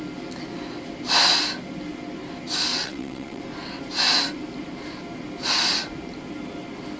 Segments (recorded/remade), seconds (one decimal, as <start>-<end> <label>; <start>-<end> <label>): 0.0-2.7 recorded; 2.7-3.4 remade; 3.4-7.0 recorded